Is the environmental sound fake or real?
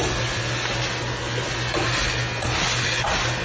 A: real